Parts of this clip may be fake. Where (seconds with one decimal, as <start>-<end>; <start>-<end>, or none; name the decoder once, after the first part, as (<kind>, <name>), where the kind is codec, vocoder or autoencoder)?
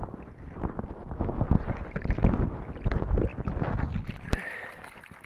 none